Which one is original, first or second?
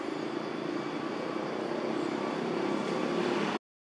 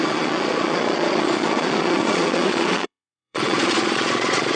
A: first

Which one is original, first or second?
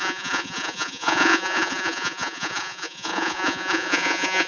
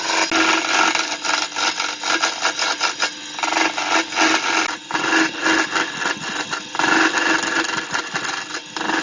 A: second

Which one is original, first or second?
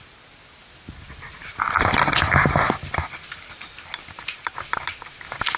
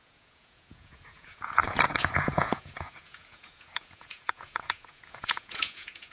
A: first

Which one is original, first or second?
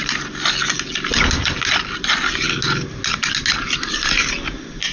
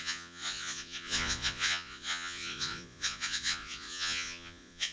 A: first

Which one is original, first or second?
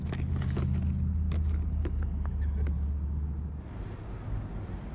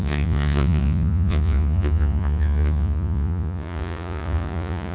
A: first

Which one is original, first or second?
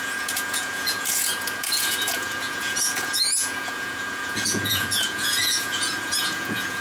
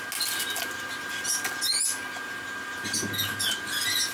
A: second